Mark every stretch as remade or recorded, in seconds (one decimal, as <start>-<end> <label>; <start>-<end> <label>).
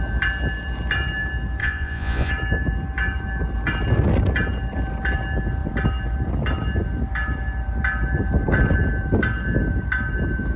0.0-1.6 recorded; 1.6-2.3 remade; 2.3-10.6 recorded